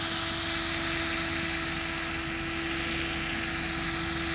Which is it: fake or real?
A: real